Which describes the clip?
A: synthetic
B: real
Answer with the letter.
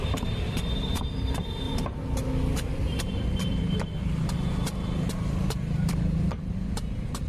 A